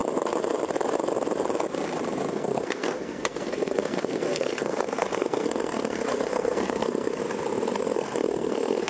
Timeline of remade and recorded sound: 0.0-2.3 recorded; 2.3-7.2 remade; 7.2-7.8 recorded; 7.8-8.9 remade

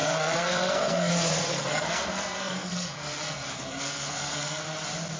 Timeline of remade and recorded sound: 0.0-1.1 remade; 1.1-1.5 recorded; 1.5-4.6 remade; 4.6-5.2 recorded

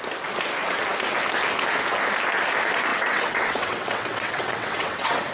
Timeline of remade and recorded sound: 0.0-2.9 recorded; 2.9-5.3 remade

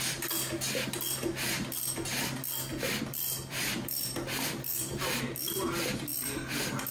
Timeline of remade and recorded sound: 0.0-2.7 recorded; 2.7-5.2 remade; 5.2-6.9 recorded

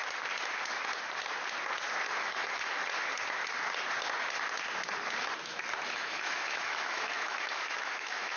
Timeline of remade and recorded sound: 0.0-2.2 recorded; 2.2-2.8 remade; 2.8-5.9 recorded; 5.9-8.4 remade

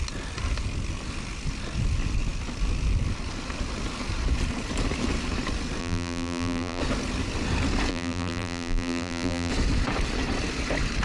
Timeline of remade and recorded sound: 0.0-5.8 recorded; 5.8-6.8 remade; 6.8-7.9 recorded; 7.9-9.5 remade; 9.5-11.0 recorded

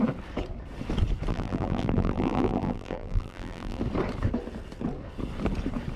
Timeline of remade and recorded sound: 0.0-1.3 recorded; 1.3-3.8 remade; 3.8-6.0 recorded

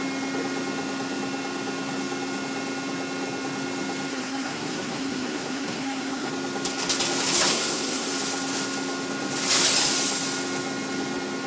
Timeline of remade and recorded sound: 0.0-4.1 recorded; 4.1-6.3 remade; 6.3-7.5 recorded; 7.5-8.1 remade; 8.1-11.5 recorded